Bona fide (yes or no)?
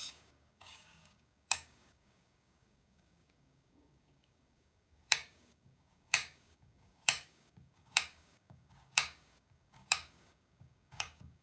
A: no